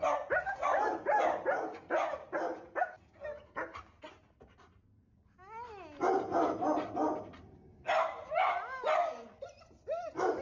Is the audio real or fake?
real